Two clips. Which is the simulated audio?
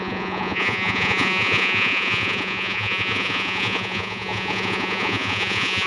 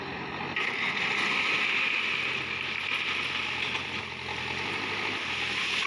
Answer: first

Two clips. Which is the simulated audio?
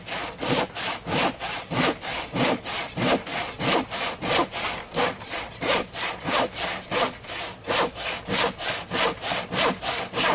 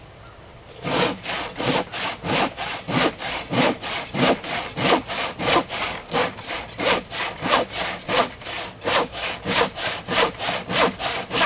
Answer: second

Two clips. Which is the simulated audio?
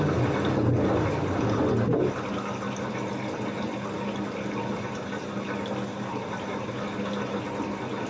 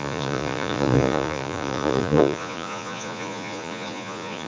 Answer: second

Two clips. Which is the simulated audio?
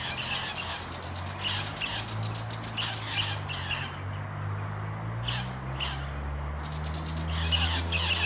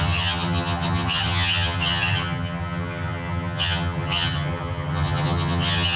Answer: second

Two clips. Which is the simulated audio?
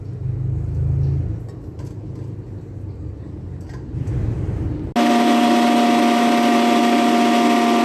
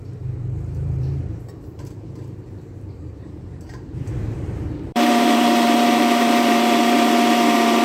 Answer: second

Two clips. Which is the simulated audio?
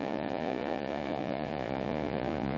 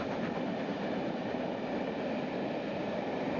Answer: first